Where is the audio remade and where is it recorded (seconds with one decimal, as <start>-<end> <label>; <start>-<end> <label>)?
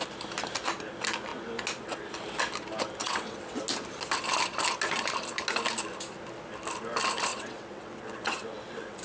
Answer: 0.0-3.0 recorded; 3.0-3.6 remade; 3.6-7.3 recorded; 7.3-9.0 remade